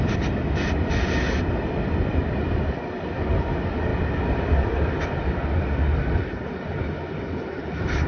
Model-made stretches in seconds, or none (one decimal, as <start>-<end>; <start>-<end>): 3.9-6.8